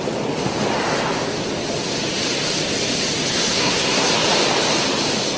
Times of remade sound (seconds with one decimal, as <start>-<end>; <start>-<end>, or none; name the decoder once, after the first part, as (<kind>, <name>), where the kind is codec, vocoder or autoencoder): 3.3-4.1 (codec, SNAC)